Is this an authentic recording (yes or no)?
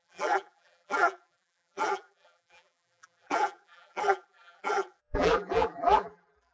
no